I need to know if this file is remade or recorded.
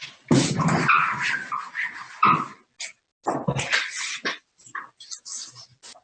recorded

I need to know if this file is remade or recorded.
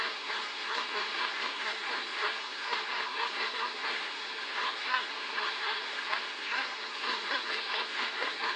remade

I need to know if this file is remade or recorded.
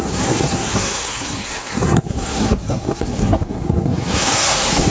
remade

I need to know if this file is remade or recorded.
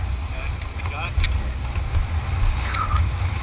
recorded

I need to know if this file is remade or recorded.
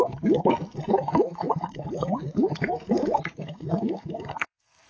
remade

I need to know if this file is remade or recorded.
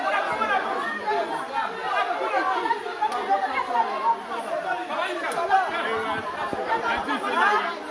recorded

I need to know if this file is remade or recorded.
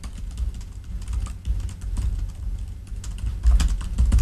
recorded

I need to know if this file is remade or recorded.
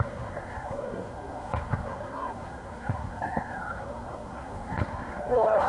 remade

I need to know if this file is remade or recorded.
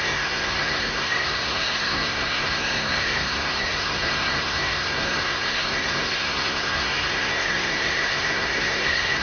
remade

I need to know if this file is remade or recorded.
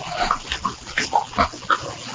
recorded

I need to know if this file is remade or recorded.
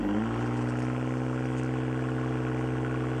recorded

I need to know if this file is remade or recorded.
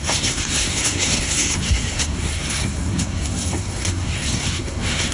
remade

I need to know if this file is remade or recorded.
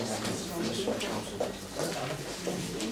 recorded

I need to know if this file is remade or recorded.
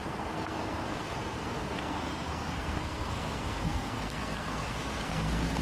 remade